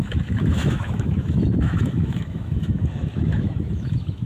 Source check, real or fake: fake